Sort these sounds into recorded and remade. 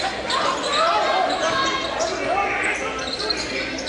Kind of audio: recorded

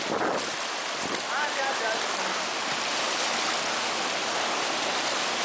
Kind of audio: recorded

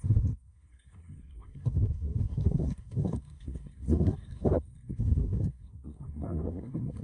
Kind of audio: remade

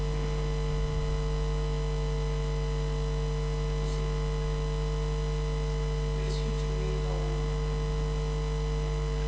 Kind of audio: recorded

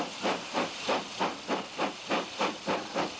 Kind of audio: recorded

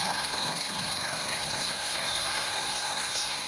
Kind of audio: remade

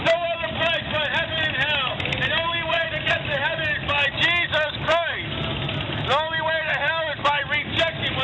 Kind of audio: recorded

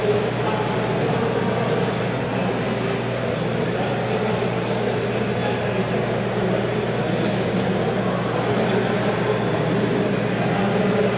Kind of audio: recorded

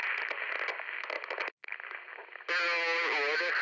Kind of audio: recorded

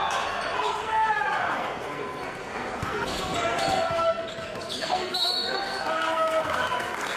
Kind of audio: remade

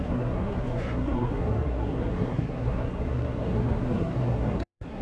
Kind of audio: remade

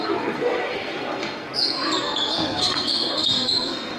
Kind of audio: remade